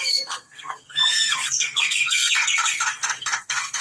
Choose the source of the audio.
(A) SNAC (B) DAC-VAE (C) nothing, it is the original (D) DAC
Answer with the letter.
A